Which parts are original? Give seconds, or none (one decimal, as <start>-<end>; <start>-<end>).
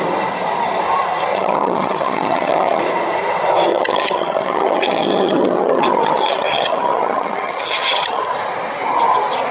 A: 0.0-1.3; 2.8-3.7; 8.2-9.5